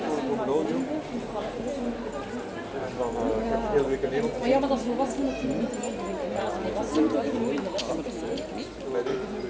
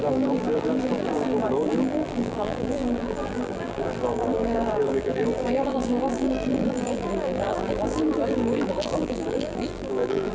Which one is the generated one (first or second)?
second